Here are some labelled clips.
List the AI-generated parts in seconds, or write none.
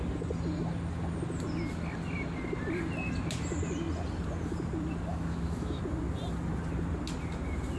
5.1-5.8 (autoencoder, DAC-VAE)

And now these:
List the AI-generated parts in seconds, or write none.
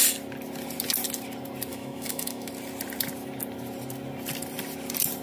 1.7-2.5 (autoencoder, DAC-VAE)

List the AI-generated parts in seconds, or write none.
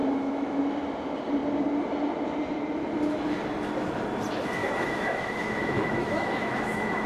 0.0-0.6 (autoencoder, DAC-VAE); 4.6-7.1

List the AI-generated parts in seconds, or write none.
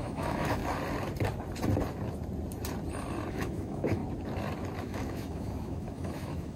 0.0-0.6 (autoencoder, DAC-VAE); 3.3-4.0; 4.8-6.6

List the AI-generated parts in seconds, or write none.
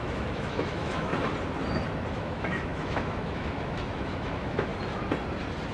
0.0-1.1 (autoencoder, DAC-VAE); 2.1-4.7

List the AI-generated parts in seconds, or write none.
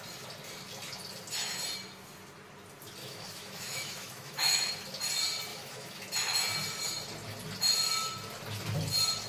3.0-4.7 (autoencoder, DAC-VAE); 5.5-6.0